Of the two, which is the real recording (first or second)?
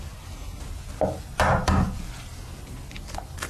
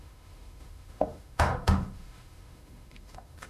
first